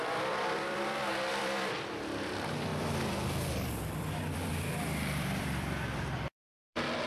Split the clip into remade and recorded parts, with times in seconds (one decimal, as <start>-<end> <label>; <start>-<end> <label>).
0.0-7.1 remade